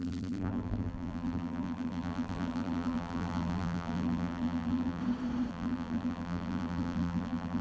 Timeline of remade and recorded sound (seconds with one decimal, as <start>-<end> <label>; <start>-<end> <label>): 0.0-5.0 remade; 5.0-5.5 recorded; 5.5-7.6 remade